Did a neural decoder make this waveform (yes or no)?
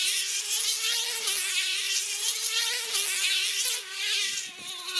no